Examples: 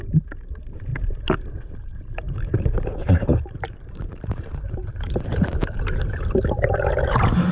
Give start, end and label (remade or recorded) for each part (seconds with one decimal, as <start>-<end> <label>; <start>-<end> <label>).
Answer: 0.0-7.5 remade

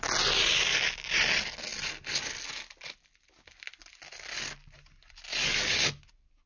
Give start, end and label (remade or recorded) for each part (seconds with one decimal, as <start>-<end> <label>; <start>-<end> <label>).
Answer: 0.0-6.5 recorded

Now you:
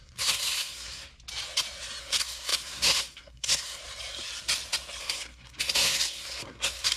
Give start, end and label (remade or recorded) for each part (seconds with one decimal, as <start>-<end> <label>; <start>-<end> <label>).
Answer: 0.0-1.1 remade; 1.1-2.0 recorded; 2.0-3.8 remade; 3.8-5.0 recorded; 5.0-7.0 remade

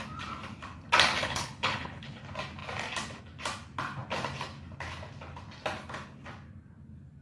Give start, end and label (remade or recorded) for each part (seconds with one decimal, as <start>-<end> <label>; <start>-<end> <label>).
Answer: 0.0-1.2 recorded; 1.2-2.2 remade; 2.2-7.2 recorded

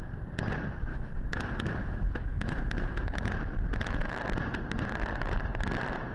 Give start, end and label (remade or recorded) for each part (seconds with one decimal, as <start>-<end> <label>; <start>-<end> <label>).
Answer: 0.0-0.9 recorded; 0.9-3.3 remade; 3.3-6.1 recorded

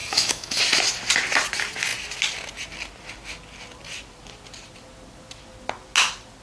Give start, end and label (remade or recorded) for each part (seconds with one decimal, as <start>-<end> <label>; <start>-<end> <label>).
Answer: 0.0-0.6 remade; 0.6-6.4 recorded

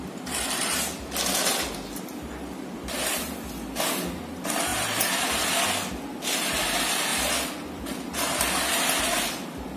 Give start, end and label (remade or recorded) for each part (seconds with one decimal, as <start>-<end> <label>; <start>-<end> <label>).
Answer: 0.0-9.8 recorded